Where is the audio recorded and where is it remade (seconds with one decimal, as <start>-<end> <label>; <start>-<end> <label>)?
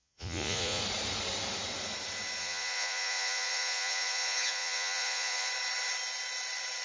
0.0-0.8 remade; 0.8-2.4 recorded; 2.4-5.5 remade; 5.5-6.8 recorded